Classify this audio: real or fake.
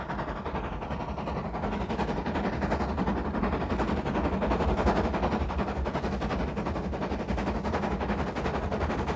real